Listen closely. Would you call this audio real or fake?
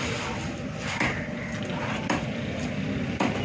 real